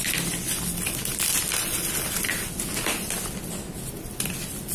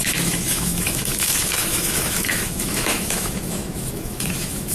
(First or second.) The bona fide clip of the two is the first